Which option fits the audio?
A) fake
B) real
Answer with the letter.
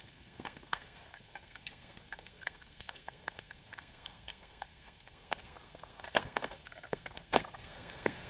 A